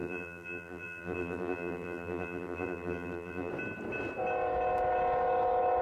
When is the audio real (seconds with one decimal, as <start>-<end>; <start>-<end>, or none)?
3.5-5.8